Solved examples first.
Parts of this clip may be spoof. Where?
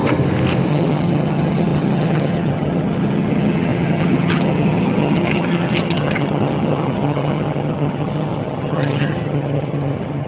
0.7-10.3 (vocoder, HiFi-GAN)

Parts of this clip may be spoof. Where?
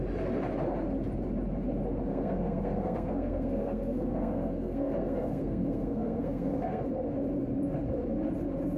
2.1-6.8 (codec, SNAC)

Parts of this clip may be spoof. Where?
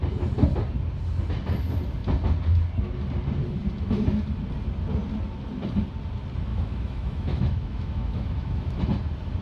6.5-8.8 (autoencoder, DAC-VAE)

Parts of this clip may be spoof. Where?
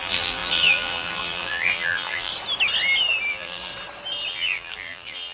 0.0-2.3 (vocoder, BigVGAN v2); 3.3-3.7; 4.3-5.3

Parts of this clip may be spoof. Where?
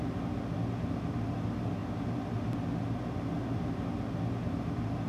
none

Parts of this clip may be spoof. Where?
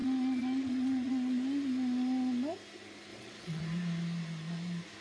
0.0-1.1 (vocoder, Vocos); 3.1-3.6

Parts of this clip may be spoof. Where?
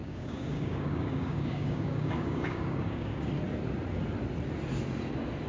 0.0-3.3 (codec, DAC)